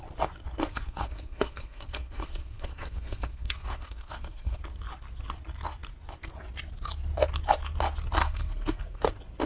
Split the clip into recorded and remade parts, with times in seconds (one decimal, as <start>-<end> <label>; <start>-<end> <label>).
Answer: 0.0-0.7 recorded; 0.7-4.6 remade; 4.6-8.2 recorded; 8.2-9.1 remade; 9.1-9.5 recorded